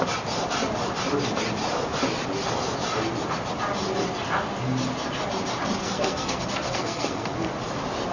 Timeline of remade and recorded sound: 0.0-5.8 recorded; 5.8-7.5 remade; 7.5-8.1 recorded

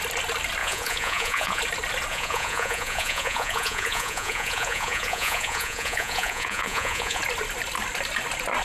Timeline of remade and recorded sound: 0.0-0.6 recorded; 0.6-1.6 remade; 1.6-2.1 recorded; 2.1-7.2 remade; 7.2-8.6 recorded

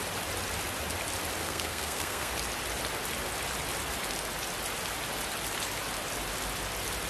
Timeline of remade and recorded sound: 0.0-1.4 recorded; 1.4-2.3 remade; 2.3-7.1 recorded

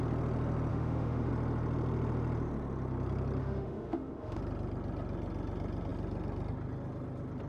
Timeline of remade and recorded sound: 0.0-0.7 recorded; 0.7-1.3 remade; 1.3-3.4 recorded; 3.4-4.4 remade; 4.4-7.5 recorded